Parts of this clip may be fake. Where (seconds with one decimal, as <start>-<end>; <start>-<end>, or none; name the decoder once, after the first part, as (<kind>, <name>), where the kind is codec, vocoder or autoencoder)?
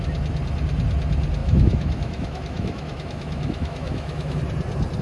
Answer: 1.4-4.4 (autoencoder, DAC-VAE)